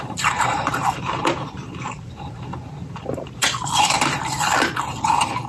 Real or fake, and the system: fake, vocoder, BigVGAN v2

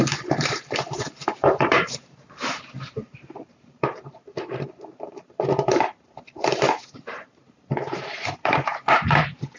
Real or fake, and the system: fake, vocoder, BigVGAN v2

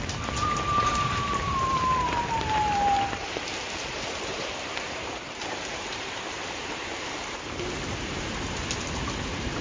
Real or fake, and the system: fake, vocoder, BigVGAN v2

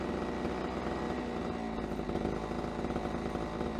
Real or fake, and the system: real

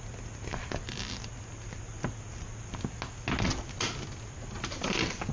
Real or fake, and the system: real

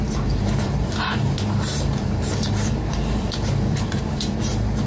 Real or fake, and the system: fake, vocoder, BigVGAN v2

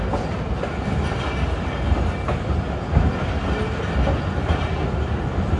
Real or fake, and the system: real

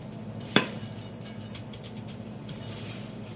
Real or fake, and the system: fake, vocoder, BigVGAN v2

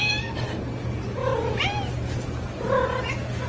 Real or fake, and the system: real